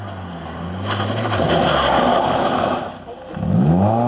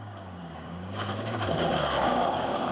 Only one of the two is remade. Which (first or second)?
second